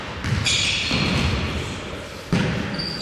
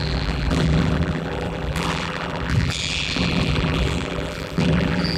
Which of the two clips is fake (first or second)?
second